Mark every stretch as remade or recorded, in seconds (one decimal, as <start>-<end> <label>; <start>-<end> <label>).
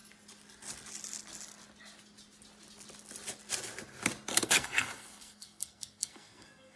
0.0-4.3 recorded; 4.3-6.8 remade